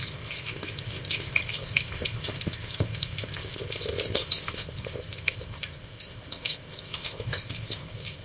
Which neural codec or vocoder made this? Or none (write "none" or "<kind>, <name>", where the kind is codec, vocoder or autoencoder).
codec, ZipCodec